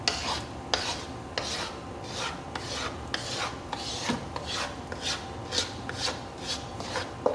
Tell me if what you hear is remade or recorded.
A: recorded